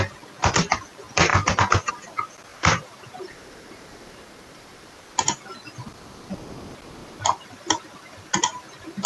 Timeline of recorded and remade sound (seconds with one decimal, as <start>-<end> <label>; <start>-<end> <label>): 0.0-2.5 recorded; 2.5-5.0 remade; 5.0-7.0 recorded; 7.0-9.1 remade